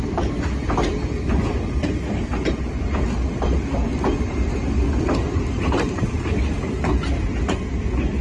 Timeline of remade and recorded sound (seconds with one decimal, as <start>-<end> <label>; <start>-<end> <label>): 0.0-8.2 recorded